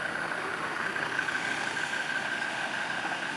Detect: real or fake fake